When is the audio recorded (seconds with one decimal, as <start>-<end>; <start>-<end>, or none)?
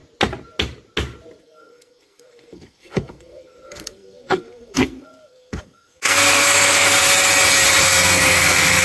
0.0-1.4; 7.0-7.8